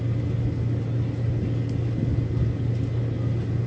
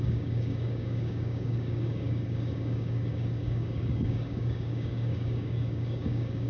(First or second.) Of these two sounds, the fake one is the second